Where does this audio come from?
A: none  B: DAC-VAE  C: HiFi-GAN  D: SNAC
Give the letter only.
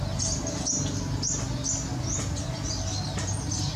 A